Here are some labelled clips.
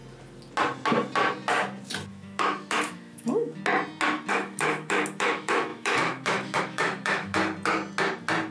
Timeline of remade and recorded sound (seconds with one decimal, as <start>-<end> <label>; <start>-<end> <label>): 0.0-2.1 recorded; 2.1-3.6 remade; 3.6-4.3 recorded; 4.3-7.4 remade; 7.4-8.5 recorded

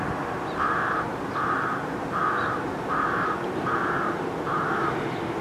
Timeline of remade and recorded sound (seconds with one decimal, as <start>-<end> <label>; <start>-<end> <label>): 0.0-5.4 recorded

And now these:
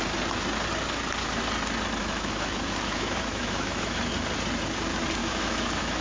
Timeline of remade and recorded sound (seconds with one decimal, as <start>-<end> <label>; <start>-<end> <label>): 0.0-2.0 recorded; 2.0-4.0 remade; 4.0-5.2 recorded; 5.2-6.0 remade